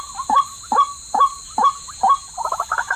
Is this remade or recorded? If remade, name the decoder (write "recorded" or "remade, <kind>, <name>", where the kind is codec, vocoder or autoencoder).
recorded